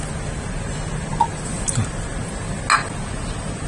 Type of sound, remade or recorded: recorded